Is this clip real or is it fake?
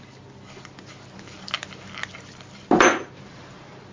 real